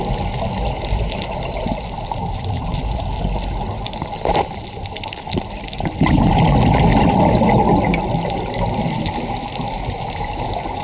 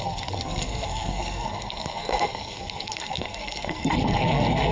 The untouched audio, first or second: first